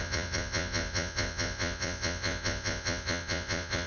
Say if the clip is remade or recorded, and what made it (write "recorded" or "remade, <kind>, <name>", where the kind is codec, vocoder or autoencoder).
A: remade, vocoder, Vocos